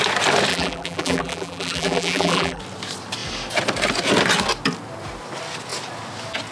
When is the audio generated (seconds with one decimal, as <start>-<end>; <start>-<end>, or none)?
0.5-2.6